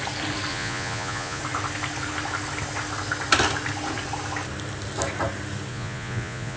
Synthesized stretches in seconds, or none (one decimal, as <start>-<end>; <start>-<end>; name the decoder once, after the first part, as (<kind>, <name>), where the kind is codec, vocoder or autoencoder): 0.5-1.4 (vocoder, Vocos); 5.7-6.6